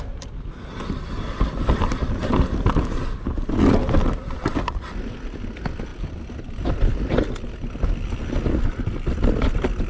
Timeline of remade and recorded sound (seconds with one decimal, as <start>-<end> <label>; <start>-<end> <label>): 0.0-9.9 recorded